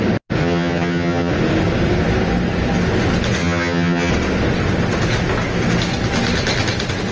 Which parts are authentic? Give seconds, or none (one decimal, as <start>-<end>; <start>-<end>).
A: 0.0-0.4; 1.3-3.4; 4.1-7.1